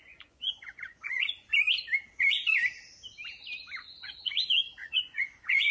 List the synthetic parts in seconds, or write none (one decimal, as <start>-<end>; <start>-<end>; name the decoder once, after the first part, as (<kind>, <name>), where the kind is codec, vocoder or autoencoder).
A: 0.0-1.5 (vocoder, Vocos); 2.1-2.5; 3.8-5.7

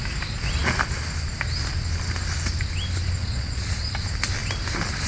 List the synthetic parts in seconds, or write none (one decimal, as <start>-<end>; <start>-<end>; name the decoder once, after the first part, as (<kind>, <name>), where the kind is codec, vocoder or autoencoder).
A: 3.2-3.9 (vocoder, Vocos)